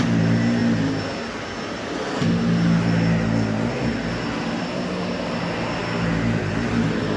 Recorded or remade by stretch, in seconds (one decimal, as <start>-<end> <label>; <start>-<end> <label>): 0.0-7.2 recorded